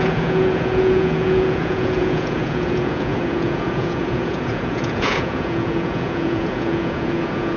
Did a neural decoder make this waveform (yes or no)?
yes